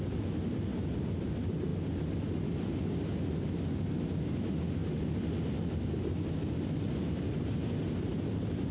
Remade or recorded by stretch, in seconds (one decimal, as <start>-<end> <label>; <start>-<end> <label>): 0.0-8.7 recorded